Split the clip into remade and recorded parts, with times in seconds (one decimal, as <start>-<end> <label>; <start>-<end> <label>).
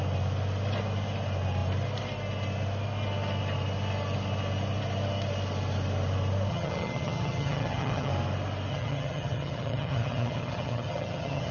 0.0-6.5 recorded; 6.5-8.1 remade; 8.1-8.7 recorded; 8.7-11.5 remade